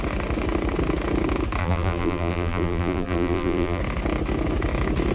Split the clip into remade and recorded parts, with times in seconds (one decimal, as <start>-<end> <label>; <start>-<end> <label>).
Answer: 0.0-1.6 recorded; 1.6-3.8 remade; 3.8-5.1 recorded